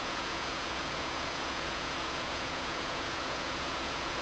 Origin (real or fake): fake